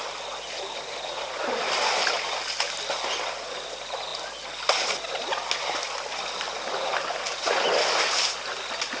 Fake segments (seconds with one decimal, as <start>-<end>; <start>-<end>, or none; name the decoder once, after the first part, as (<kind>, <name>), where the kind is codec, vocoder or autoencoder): none